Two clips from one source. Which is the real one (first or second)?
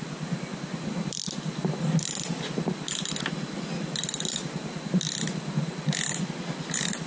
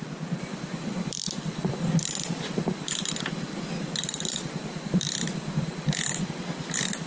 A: first